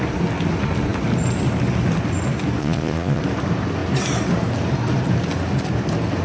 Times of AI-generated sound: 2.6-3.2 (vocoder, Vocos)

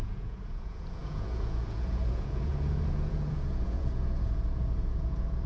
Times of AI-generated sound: 0.0-5.5 (vocoder, Vocos)